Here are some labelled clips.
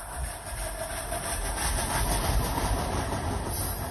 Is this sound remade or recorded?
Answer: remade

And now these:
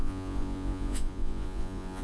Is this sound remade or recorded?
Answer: remade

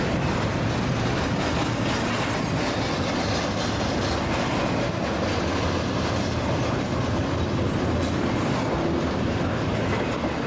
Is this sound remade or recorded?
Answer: recorded